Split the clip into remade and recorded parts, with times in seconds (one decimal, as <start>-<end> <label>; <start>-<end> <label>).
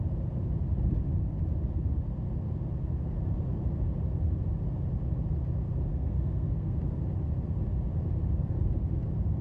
0.0-5.9 recorded; 5.9-6.8 remade; 6.8-9.4 recorded